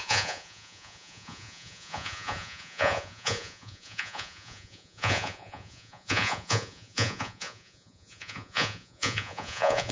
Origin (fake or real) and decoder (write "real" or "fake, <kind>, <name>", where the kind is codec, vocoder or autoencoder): fake, vocoder, Vocos